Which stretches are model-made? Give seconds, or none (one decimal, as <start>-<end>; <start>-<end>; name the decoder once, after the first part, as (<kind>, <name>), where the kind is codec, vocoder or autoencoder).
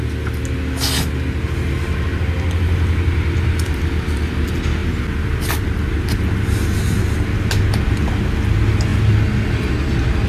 none